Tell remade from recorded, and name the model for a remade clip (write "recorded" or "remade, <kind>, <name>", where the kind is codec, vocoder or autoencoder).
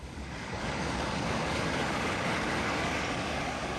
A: remade, codec, DAC